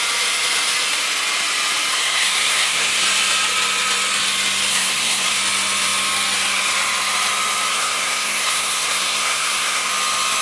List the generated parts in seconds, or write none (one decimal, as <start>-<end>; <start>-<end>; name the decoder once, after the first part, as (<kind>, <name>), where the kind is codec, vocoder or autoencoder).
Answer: 1.9-3.0 (codec, SNAC); 4.7-5.4; 7.7-9.9